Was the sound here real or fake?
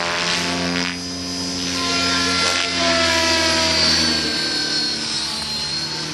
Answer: real